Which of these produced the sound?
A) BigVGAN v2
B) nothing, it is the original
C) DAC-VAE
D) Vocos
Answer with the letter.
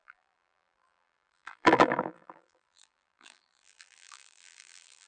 A